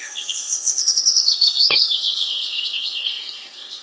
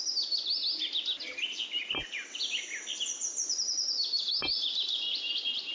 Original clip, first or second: second